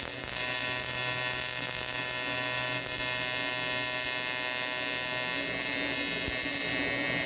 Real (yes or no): yes